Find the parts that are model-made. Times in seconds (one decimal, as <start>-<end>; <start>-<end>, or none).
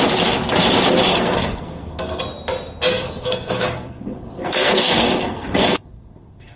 1.1-2.2; 2.9-6.6